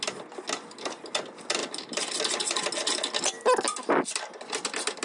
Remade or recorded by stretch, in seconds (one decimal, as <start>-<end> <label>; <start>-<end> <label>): 0.0-1.6 recorded; 1.6-2.1 remade; 2.1-5.0 recorded